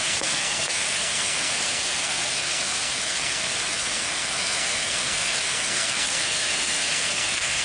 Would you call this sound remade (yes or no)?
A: yes